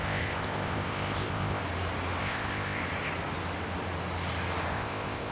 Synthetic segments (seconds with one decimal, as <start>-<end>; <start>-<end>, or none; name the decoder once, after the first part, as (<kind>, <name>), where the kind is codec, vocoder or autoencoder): 0.0-1.6 (codec, ZipCodec); 2.2-2.8; 4.7-5.3